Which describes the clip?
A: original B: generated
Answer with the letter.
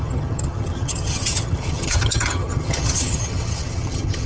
B